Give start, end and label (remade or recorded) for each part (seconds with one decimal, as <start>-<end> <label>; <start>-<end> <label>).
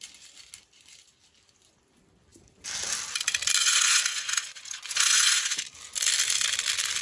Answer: 0.0-3.6 recorded; 3.6-5.6 remade; 5.6-7.0 recorded